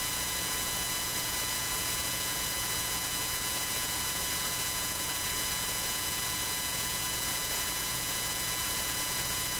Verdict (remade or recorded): remade